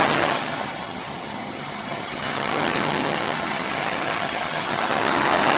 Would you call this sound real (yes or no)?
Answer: no